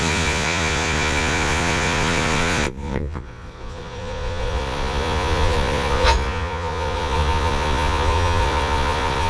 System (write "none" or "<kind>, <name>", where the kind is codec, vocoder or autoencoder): vocoder, Vocos